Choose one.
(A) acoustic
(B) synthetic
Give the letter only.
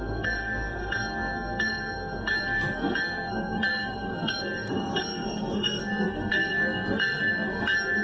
B